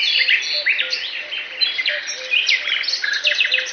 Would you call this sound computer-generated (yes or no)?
no